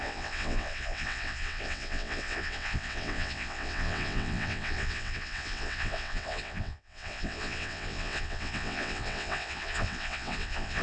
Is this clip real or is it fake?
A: fake